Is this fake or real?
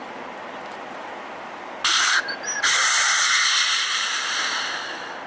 real